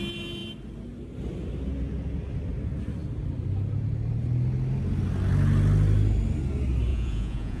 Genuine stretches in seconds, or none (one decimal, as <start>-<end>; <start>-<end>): 0.0-6.9